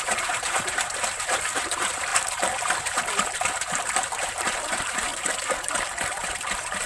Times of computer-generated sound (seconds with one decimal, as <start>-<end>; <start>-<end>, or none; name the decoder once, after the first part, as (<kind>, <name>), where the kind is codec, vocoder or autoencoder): 0.0-5.1 (vocoder, BigVGAN v2); 5.7-6.9